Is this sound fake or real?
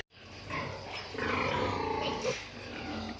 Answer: real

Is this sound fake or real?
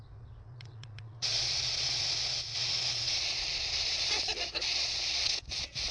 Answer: fake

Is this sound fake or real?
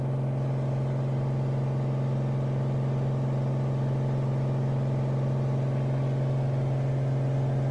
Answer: real